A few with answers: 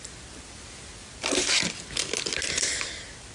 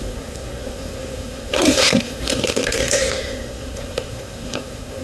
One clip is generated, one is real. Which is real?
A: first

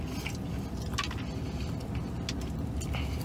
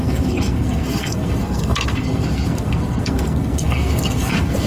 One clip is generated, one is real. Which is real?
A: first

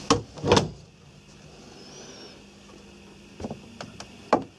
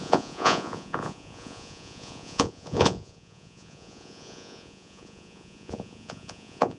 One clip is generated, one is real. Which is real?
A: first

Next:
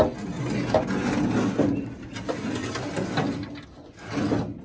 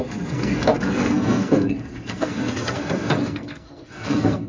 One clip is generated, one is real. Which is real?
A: first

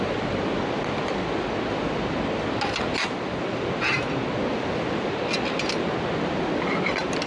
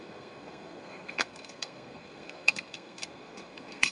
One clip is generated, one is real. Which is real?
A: first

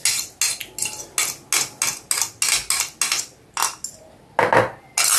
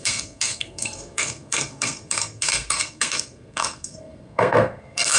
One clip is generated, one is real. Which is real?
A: first